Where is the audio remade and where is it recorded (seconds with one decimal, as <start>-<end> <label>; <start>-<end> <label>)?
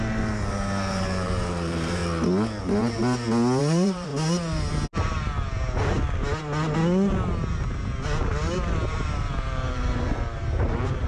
0.0-2.0 remade; 2.0-2.6 recorded; 2.6-3.0 remade; 3.0-3.6 recorded; 3.6-4.1 remade; 4.1-9.2 recorded; 9.2-11.1 remade